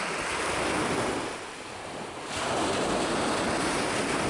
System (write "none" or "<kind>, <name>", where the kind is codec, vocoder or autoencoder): none